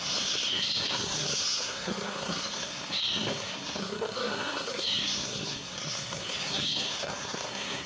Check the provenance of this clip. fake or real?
fake